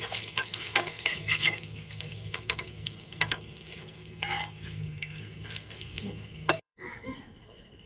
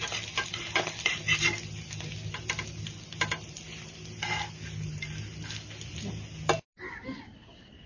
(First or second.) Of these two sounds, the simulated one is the first